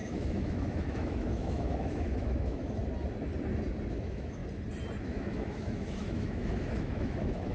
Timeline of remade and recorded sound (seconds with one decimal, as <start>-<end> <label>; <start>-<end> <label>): 0.0-2.8 remade; 2.8-3.9 recorded; 3.9-4.4 remade; 4.4-5.0 recorded; 5.0-7.5 remade